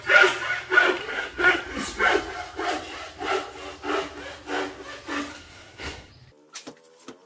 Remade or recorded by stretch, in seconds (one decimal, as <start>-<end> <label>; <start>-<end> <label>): 0.0-1.0 recorded; 1.0-1.6 remade; 1.6-5.3 recorded; 5.3-6.1 remade; 6.1-7.3 recorded